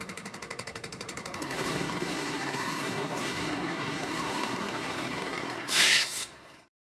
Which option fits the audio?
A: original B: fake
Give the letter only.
B